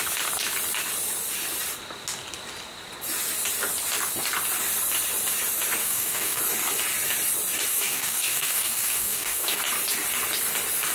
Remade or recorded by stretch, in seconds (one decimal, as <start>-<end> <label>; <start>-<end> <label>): 0.0-5.8 recorded; 5.8-6.4 remade; 6.4-7.7 recorded; 7.7-9.6 remade; 9.6-10.9 recorded